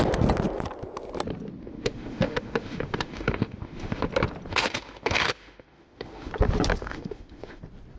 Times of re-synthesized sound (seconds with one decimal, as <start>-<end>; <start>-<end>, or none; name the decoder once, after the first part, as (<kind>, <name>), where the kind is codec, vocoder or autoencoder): 1.6-4.0 (autoencoder, DAC-VAE); 4.5-6.3; 6.8-7.6